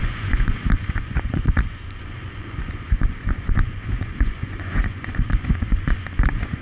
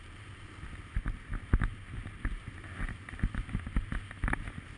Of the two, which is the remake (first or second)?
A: first